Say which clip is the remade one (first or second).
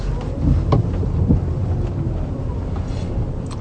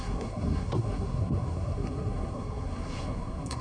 second